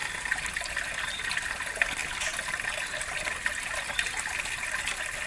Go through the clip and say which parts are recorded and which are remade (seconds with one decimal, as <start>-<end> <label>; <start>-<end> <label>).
0.0-5.3 recorded